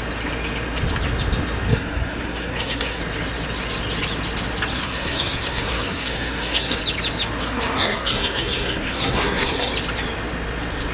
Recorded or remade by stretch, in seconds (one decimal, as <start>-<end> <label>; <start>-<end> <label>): 0.0-1.7 recorded; 1.7-3.0 remade; 3.0-4.7 recorded; 4.7-6.8 remade; 6.8-7.4 recorded; 7.4-9.7 remade; 9.7-10.9 recorded